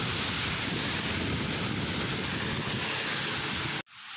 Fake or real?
real